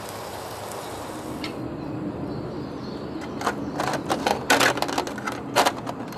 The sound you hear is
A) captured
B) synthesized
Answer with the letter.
A